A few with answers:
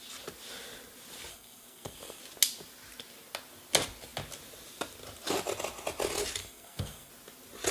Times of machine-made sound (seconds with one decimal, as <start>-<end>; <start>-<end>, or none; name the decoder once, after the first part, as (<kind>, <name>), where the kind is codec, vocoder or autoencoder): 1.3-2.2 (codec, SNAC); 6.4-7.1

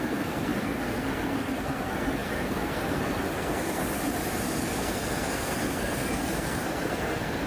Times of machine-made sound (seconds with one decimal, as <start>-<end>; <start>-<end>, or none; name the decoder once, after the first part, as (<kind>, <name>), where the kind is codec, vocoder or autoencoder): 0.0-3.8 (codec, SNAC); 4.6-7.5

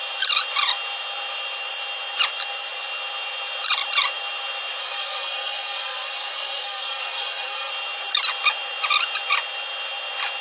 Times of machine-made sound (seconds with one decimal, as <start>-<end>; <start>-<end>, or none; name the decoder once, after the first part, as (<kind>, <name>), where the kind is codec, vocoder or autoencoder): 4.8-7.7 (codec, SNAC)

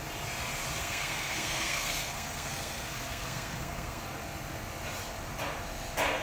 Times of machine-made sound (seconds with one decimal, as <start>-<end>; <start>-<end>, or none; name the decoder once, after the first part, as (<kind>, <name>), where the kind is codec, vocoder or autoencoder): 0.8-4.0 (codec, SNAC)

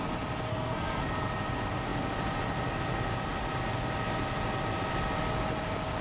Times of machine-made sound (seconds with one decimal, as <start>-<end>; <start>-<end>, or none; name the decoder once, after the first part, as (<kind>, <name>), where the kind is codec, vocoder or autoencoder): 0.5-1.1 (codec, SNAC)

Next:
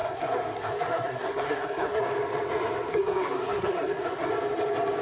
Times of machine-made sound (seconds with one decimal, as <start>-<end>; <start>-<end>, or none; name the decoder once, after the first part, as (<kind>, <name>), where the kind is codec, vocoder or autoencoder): 0.0-2.0 (codec, SNAC); 2.9-4.3